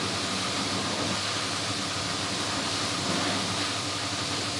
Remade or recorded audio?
recorded